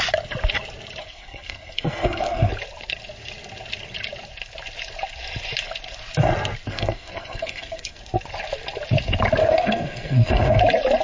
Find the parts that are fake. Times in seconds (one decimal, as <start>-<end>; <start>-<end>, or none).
1.0-2.5; 6.7-8.0; 9.4-10.6